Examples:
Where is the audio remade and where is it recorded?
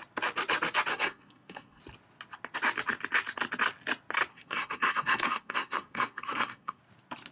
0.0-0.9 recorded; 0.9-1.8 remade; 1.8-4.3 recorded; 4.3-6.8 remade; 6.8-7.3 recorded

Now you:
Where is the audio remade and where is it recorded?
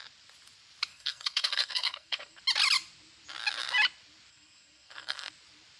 0.0-0.9 recorded; 0.9-2.4 remade; 2.4-4.3 recorded; 4.3-5.3 remade; 5.3-5.8 recorded